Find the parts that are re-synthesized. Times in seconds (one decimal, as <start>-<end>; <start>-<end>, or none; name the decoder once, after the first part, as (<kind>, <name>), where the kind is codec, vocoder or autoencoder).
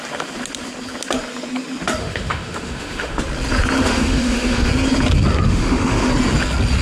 2.0-3.2 (autoencoder, DAC-VAE); 3.8-4.7; 5.5-6.1